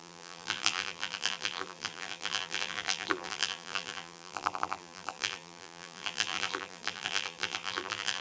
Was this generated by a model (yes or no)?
yes